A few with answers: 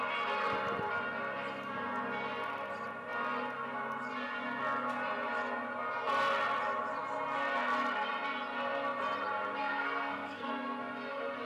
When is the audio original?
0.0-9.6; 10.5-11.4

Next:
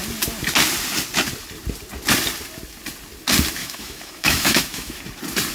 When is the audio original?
0.0-3.6; 5.0-5.5

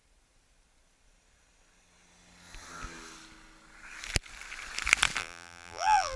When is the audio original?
0.0-5.2

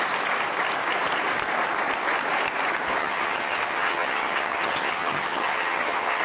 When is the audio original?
0.0-3.0

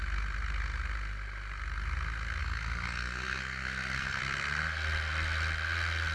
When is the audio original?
0.0-2.4; 4.2-6.1

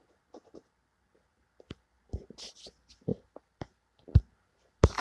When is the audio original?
0.0-5.0